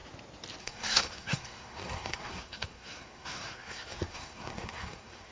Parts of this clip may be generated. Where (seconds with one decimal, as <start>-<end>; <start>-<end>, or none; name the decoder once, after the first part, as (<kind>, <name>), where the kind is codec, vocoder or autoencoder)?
0.6-5.3 (codec, SNAC)